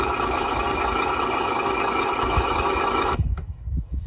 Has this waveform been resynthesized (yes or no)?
yes